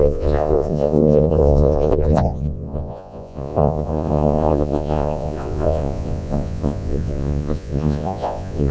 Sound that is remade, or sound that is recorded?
remade